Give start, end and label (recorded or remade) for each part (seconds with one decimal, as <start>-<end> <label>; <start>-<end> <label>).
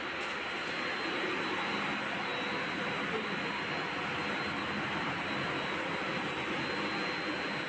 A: 0.0-7.7 recorded